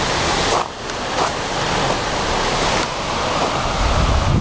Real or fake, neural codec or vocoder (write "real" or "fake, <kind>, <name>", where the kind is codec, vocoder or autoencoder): real